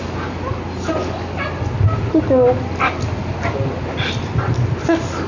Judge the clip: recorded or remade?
recorded